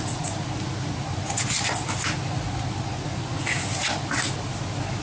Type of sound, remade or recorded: recorded